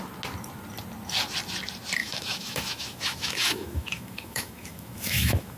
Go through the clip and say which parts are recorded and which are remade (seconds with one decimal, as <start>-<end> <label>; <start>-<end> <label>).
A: 0.0-2.0 recorded; 2.0-5.6 remade